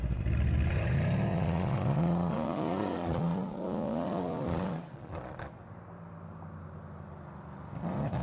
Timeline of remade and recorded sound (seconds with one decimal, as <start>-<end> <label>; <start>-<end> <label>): 0.0-1.3 recorded; 1.3-5.5 remade; 5.5-8.2 recorded